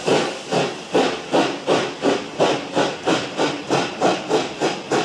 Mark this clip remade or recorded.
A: remade